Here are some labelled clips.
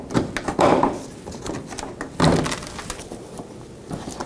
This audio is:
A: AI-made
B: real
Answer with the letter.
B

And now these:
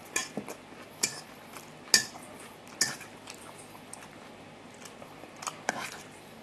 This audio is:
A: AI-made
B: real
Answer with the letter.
B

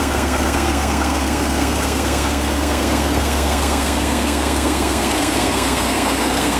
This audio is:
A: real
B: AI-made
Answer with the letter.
B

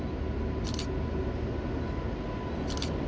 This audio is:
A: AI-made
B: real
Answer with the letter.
B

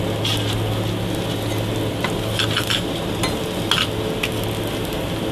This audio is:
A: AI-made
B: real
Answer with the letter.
B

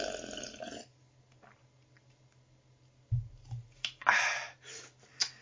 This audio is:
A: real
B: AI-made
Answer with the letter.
A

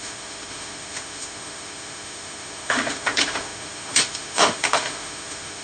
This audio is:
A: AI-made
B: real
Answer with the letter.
A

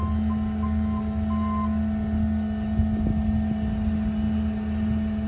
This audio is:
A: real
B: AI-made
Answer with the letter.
A